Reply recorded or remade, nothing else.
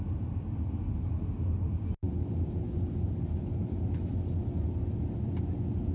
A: recorded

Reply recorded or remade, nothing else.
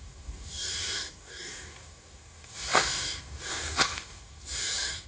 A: remade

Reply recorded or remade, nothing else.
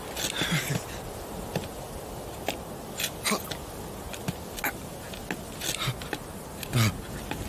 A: recorded